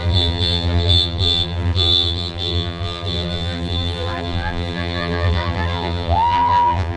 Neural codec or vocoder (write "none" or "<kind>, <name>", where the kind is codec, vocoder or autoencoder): vocoder, BigVGAN v2